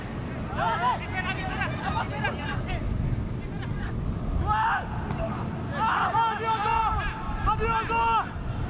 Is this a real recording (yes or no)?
yes